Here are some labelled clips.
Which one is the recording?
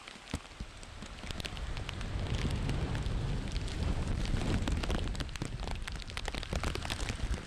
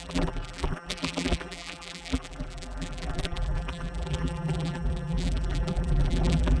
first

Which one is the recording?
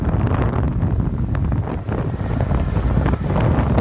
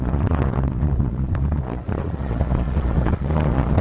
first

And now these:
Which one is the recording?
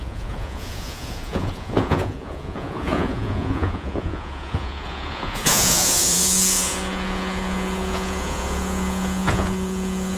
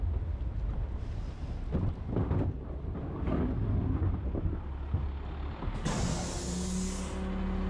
second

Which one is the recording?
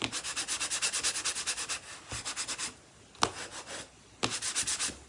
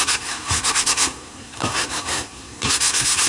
first